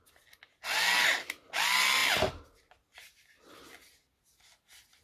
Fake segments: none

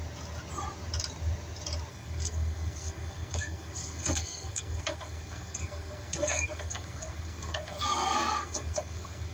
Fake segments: 1.9-9.3 (codec, SNAC)

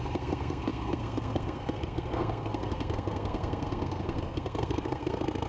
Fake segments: 0.0-5.5 (codec, SNAC)

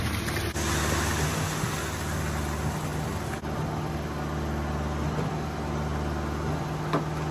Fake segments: none